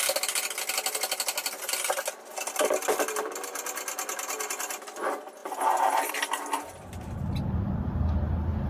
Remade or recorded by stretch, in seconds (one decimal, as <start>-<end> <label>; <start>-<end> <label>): 0.0-8.7 recorded